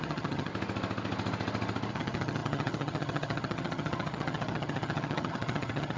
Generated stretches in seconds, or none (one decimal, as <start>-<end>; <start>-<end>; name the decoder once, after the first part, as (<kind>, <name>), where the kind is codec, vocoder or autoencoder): 0.0-0.5 (vocoder, HiFi-GAN); 1.9-6.0